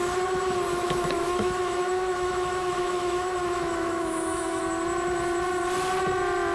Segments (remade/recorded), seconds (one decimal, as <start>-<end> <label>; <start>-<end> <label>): 0.0-0.7 recorded; 0.7-4.6 remade; 4.6-6.5 recorded